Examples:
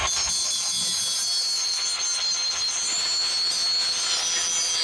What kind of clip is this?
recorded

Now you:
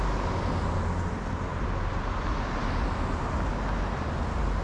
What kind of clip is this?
recorded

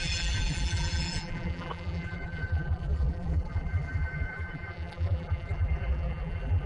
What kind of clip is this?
remade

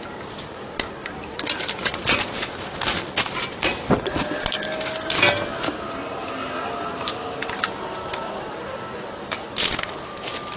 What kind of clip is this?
recorded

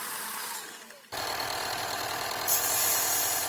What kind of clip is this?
remade